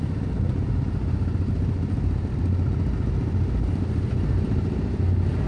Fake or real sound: real